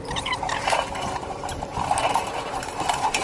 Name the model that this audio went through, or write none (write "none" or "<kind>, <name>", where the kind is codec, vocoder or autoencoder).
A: vocoder, BigVGAN v2